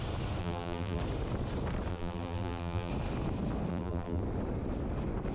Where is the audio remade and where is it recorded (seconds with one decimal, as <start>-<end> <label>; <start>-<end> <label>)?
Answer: 0.0-0.4 recorded; 0.4-1.0 remade; 1.0-1.9 recorded; 1.9-2.9 remade; 2.9-3.7 recorded; 3.7-4.2 remade; 4.2-5.3 recorded